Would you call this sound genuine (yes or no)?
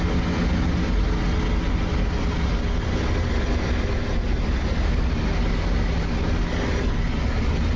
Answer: yes